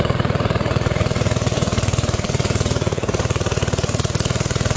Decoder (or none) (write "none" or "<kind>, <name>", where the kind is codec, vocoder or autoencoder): vocoder, Vocos